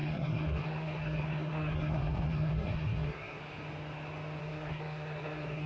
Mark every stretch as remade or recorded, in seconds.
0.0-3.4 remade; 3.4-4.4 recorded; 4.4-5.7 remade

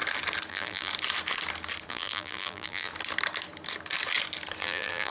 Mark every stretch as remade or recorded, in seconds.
0.0-0.5 recorded; 0.5-0.9 remade; 0.9-1.9 recorded; 1.9-2.9 remade; 2.9-4.6 recorded; 4.6-5.1 remade

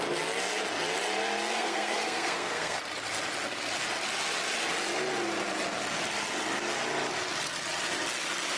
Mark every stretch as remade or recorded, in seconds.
0.0-1.5 recorded; 1.5-2.8 remade; 2.8-8.6 recorded

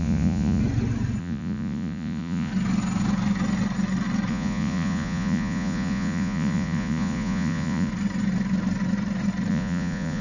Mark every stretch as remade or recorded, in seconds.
0.0-0.6 remade; 0.6-1.2 recorded; 1.2-2.5 remade; 2.5-4.3 recorded; 4.3-7.9 remade; 7.9-9.5 recorded; 9.5-10.2 remade

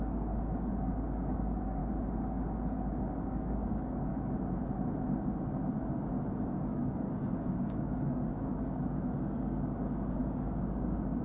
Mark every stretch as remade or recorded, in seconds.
0.0-1.8 remade; 1.8-3.0 recorded; 3.0-4.1 remade; 4.1-6.5 recorded; 6.5-11.2 remade